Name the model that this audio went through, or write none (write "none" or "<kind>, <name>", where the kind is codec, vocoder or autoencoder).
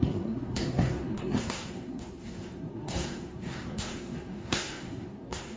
codec, SNAC